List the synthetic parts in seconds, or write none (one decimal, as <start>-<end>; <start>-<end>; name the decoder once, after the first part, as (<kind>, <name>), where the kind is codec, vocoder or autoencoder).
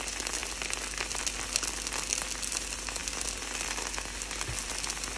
none